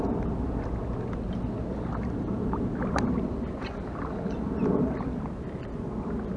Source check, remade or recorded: recorded